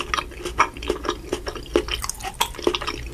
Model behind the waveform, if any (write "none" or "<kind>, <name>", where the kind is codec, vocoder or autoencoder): none